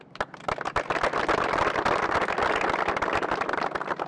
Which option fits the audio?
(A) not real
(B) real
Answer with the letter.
B